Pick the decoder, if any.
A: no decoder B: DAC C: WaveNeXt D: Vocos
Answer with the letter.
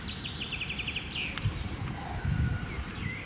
A